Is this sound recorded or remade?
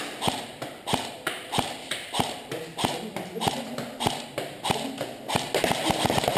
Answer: recorded